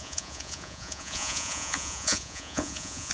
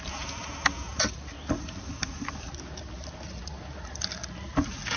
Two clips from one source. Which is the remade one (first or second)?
first